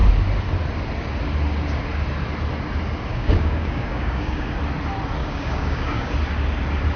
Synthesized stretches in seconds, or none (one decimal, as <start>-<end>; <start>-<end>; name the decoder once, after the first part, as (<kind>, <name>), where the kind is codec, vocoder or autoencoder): 3.1-4.5 (codec, DAC); 5.2-6.1